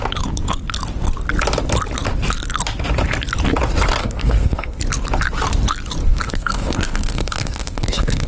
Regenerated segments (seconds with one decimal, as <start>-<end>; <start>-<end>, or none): 4.0-4.8; 6.0-8.3